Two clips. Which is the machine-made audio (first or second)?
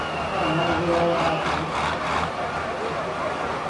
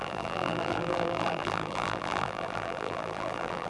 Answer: second